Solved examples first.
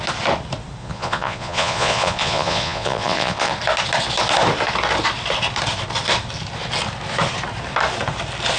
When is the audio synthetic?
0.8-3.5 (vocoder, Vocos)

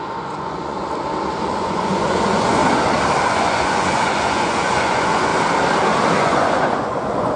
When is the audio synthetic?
0.0-0.8 (vocoder, Vocos); 1.5-2.6; 3.3-5.3; 6.2-7.4

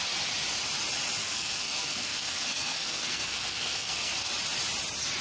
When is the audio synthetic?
1.2-4.3 (codec, SNAC)

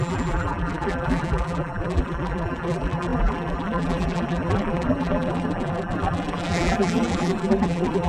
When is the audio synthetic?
0.0-8.1 (vocoder, BigVGAN v2)